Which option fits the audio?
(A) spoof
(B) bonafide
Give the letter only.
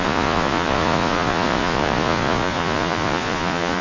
A